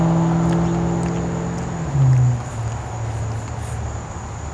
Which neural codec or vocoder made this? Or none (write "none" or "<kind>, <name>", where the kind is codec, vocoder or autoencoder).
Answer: none